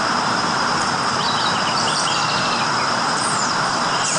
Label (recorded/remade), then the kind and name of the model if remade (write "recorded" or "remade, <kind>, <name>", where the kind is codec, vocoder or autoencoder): remade, vocoder, BigVGAN v2